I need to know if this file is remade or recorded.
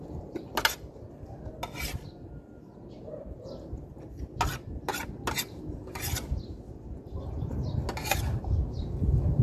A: recorded